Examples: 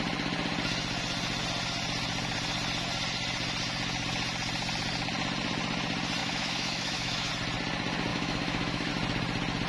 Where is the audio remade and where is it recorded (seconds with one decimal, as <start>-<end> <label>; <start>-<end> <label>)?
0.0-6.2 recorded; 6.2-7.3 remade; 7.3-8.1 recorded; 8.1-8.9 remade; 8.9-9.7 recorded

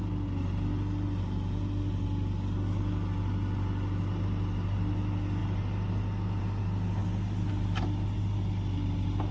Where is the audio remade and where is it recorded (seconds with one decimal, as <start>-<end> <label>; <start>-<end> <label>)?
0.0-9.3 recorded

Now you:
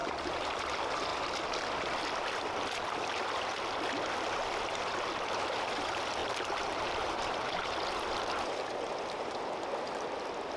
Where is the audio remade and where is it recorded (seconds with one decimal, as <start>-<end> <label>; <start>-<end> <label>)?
0.0-0.6 remade; 0.6-6.2 recorded; 6.2-7.7 remade; 7.7-10.6 recorded